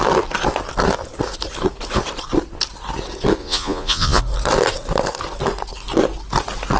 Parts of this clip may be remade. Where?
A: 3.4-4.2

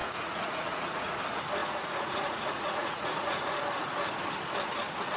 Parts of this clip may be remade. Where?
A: 0.0-1.2; 1.6-3.6

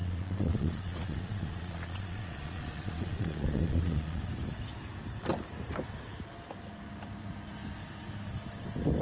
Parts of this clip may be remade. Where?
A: 0.0-4.2

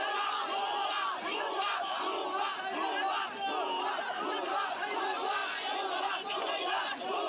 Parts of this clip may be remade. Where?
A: 0.0-2.2; 4.4-7.3

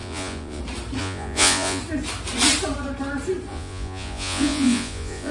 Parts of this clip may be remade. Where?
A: 0.0-0.6; 1.0-1.8; 3.5-5.3

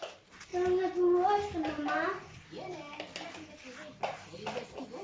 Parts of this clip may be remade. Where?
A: none